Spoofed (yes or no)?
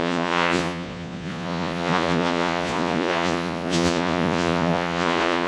yes